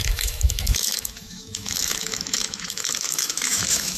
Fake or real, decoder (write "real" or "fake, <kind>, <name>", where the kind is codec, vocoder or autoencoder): fake, autoencoder, DAC-VAE